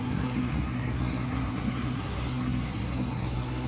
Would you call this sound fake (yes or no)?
yes